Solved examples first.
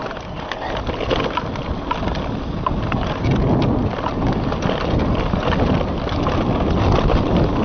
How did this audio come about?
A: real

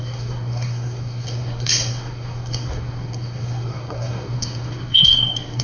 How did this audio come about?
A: fake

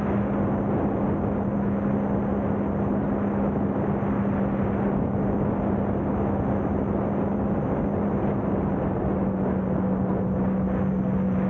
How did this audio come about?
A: real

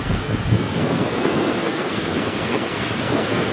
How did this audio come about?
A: fake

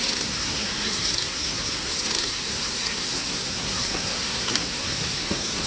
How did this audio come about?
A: fake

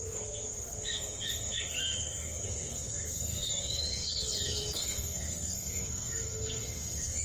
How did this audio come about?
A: fake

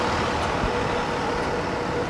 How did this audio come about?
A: real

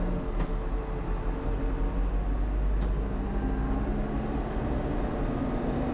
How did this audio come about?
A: real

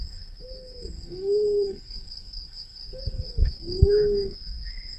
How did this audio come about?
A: fake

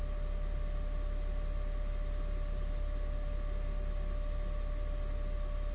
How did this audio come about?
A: real